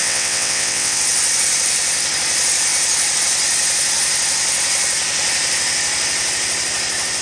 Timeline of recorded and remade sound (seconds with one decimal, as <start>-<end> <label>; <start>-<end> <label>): 0.0-1.0 remade; 1.0-7.2 recorded